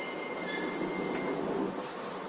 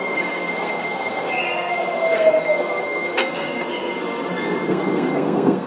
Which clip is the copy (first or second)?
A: second